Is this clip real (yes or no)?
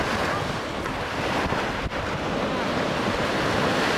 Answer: yes